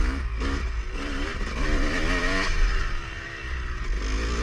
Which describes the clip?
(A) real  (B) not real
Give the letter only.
A